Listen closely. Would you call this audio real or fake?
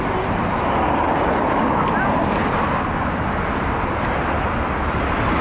real